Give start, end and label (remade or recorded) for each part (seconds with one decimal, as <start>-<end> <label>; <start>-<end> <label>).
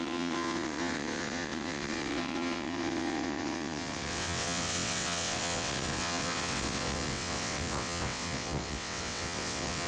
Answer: 0.0-9.9 remade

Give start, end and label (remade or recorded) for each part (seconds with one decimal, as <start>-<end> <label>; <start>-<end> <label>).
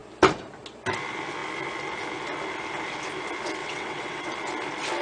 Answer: 0.0-3.6 recorded; 3.6-4.3 remade; 4.3-5.0 recorded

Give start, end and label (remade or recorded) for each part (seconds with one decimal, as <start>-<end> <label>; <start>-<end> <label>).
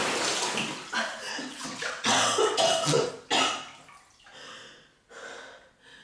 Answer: 0.0-1.3 recorded; 1.3-3.1 remade; 3.1-6.0 recorded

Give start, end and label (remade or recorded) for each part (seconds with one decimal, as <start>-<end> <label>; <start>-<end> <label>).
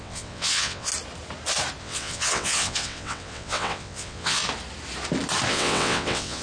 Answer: 0.0-0.9 remade; 0.9-1.8 recorded; 1.8-4.4 remade; 4.4-5.5 recorded; 5.5-6.4 remade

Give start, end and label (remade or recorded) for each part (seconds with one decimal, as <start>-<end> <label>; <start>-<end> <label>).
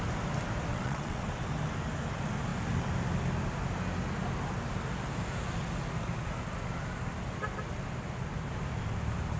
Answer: 0.0-0.7 recorded; 0.7-1.2 remade; 1.2-9.4 recorded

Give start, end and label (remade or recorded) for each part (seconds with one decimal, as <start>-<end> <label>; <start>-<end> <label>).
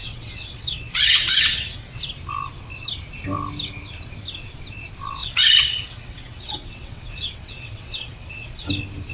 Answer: 0.0-2.0 remade; 2.0-5.2 recorded; 5.2-8.7 remade; 8.7-9.1 recorded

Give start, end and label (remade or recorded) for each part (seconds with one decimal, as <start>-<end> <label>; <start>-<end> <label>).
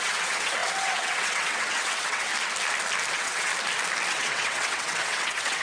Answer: 0.0-2.3 remade; 2.3-3.1 recorded; 3.1-3.5 remade; 3.5-4.1 recorded; 4.1-5.6 remade